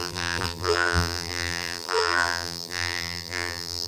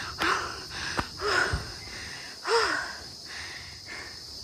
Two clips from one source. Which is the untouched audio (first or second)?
second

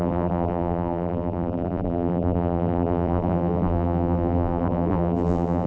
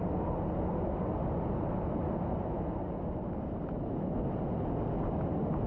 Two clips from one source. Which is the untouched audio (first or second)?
second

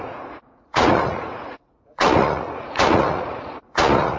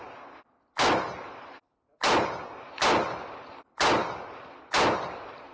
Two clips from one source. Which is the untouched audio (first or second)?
second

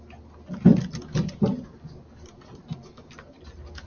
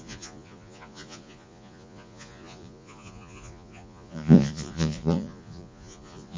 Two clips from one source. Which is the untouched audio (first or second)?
first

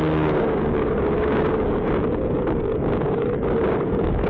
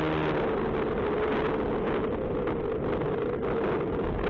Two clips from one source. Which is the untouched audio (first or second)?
second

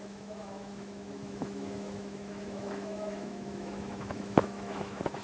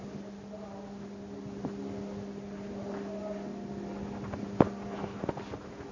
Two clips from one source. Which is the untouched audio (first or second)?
second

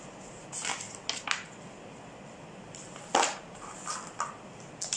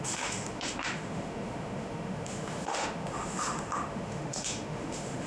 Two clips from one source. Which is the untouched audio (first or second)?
first